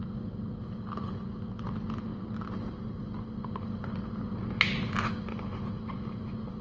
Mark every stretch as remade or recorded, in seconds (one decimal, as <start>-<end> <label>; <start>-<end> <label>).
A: 0.0-6.6 recorded